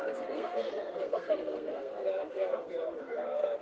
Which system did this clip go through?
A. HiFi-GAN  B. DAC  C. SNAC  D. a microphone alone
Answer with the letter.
C